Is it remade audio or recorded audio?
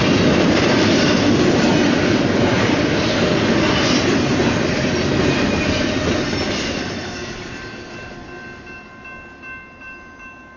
recorded